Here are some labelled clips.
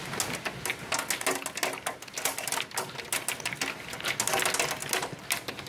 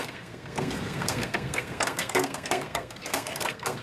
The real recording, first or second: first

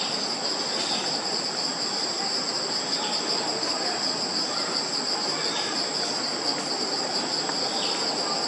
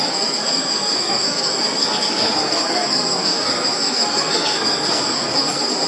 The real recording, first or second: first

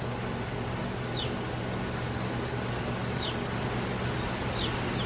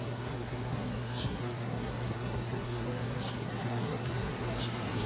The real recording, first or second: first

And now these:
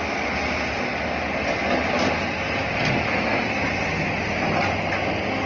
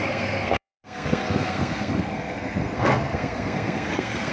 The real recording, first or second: first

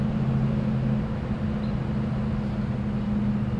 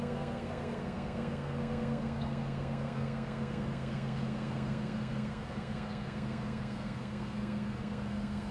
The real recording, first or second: first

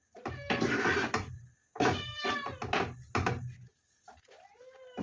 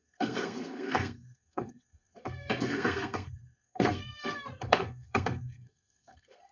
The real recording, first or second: first